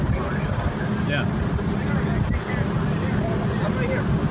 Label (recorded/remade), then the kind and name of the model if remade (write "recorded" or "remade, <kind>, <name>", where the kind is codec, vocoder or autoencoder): recorded